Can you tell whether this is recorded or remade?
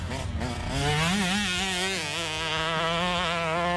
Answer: recorded